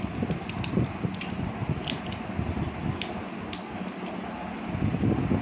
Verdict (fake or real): real